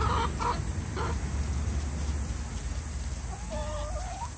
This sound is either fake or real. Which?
real